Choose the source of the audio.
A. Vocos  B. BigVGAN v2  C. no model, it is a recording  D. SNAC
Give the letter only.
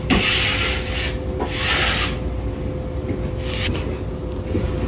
C